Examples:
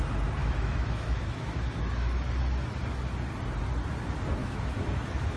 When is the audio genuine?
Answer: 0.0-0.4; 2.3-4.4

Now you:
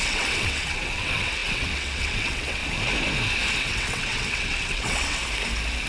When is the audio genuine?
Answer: 2.6-3.6; 5.2-5.9

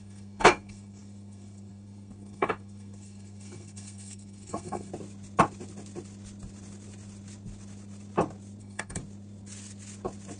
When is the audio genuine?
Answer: 4.9-8.6; 9.0-10.4

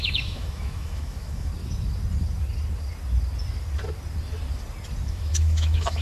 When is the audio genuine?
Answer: 1.5-5.1